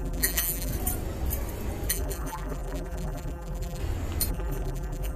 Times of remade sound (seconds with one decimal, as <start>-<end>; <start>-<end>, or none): 0.0-0.7; 1.9-3.8; 4.3-5.2